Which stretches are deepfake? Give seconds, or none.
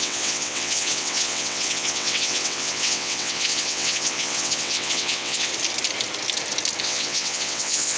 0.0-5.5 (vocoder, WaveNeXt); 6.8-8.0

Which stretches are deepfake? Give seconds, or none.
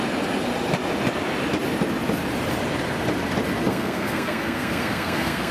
3.7-5.5 (codec, SNAC)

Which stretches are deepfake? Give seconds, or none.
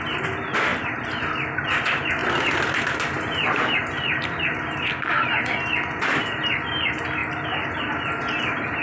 none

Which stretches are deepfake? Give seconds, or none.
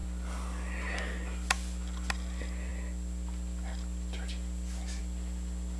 none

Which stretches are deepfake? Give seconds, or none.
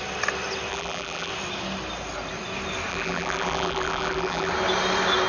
0.7-1.3 (vocoder, BigVGAN v2); 2.9-4.5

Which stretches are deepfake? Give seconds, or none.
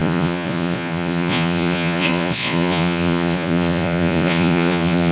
0.0-5.1 (vocoder, Vocos)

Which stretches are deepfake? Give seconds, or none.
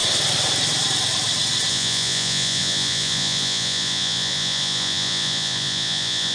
1.7-6.3 (vocoder, Vocos)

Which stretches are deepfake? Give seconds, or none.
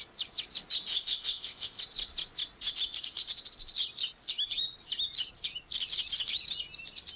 0.9-1.8 (codec, ZipCodec)